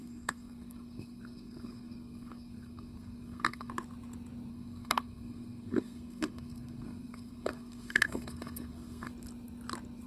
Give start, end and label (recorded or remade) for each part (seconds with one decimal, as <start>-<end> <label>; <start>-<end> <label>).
0.0-3.7 remade; 3.7-4.5 recorded; 4.5-9.1 remade; 9.1-10.1 recorded